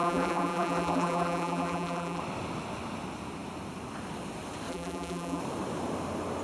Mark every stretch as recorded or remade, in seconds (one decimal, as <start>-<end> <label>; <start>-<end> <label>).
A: 0.0-2.2 remade; 2.2-4.7 recorded; 4.7-5.4 remade; 5.4-6.4 recorded